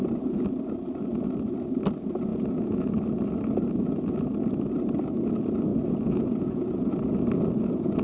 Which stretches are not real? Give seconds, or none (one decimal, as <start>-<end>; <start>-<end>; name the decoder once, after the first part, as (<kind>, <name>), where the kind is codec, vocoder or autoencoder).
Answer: 2.3-2.9 (vocoder, Vocos); 5.7-6.9